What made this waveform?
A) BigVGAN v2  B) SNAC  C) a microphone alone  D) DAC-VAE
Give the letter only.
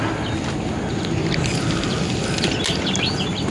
C